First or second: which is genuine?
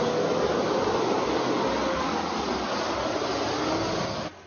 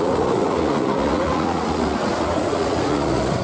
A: first